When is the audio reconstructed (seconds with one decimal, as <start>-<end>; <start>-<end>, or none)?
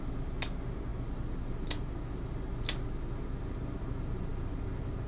none